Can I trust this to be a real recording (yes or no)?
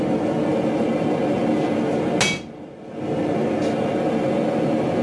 yes